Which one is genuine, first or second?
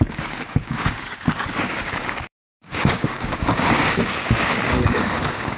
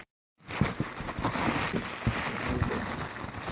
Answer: second